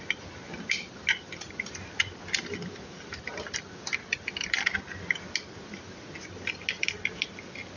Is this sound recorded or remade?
recorded